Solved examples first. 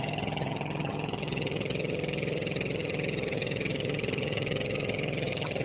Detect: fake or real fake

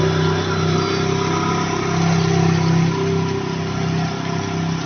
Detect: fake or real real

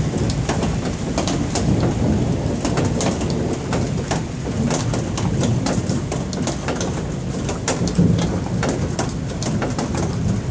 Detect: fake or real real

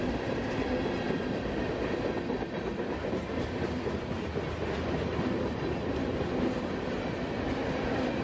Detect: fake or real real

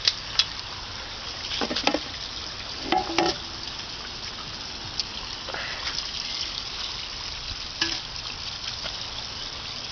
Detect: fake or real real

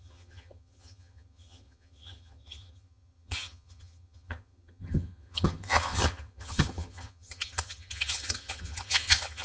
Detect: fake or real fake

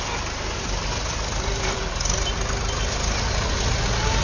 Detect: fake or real real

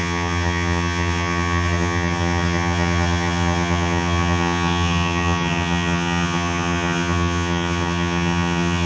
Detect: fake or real fake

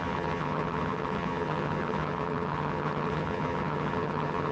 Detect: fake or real fake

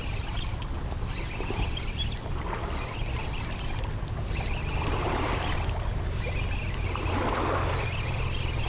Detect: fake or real real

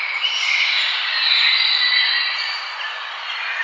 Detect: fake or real real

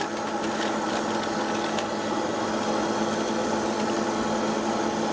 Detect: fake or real real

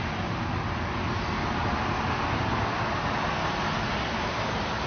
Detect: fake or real real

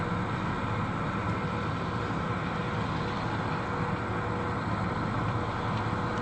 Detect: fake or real real